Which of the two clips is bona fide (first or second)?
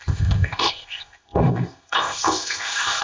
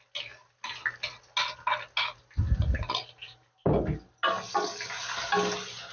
second